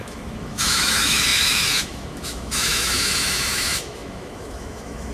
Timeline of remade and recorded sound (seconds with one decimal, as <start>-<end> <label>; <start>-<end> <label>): 0.0-5.1 remade

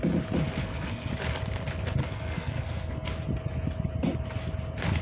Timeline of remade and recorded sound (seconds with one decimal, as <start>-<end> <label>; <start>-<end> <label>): 0.0-0.6 recorded; 0.6-1.1 remade; 1.1-2.0 recorded; 2.0-3.1 remade; 3.1-5.0 recorded

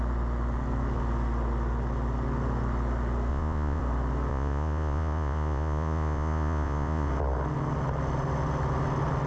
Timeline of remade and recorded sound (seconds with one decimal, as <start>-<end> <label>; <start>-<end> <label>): 0.0-3.3 recorded; 3.3-3.8 remade; 3.8-4.3 recorded; 4.3-7.1 remade; 7.1-9.3 recorded

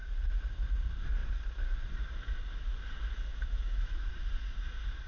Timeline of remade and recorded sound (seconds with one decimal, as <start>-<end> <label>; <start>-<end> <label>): 0.0-3.3 recorded; 3.3-4.1 remade; 4.1-5.1 recorded

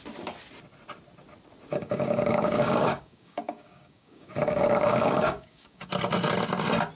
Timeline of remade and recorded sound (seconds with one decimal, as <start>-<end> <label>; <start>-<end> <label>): 0.0-1.7 recorded; 1.7-5.9 remade; 5.9-7.0 recorded

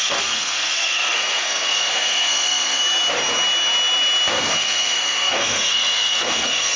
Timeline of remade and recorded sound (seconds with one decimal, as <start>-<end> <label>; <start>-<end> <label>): 0.0-2.8 remade; 2.8-4.3 recorded; 4.3-6.8 remade

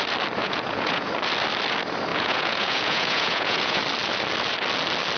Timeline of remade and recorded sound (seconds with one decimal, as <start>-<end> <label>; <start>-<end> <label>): 0.0-0.4 recorded; 0.4-1.1 remade; 1.1-2.1 recorded; 2.1-3.8 remade; 3.8-5.2 recorded